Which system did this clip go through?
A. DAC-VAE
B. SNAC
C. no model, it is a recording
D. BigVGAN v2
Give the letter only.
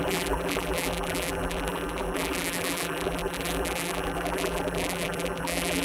D